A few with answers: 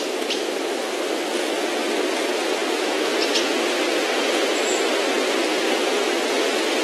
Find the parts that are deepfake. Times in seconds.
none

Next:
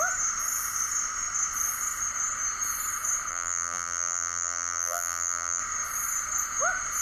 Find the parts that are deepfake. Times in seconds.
3.3-5.6 (vocoder, BigVGAN v2)

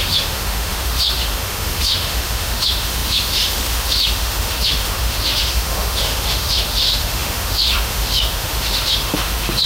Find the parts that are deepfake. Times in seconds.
0.0-9.7 (autoencoder, DAC-VAE)

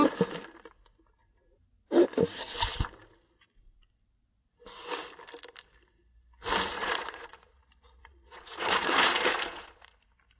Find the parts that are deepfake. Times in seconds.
6.7-9.9 (vocoder, Vocos)